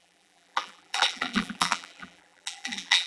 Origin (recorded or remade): remade